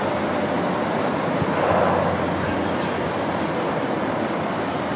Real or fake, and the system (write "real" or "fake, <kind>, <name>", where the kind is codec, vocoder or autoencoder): real